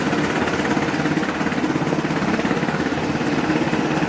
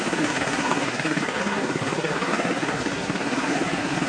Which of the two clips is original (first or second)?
first